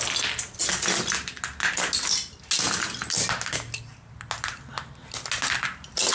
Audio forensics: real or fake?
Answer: real